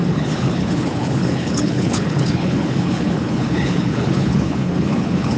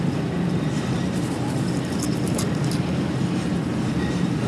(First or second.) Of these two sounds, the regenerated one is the first